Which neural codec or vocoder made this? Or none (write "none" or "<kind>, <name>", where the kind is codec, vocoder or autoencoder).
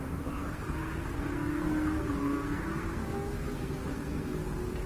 codec, SNAC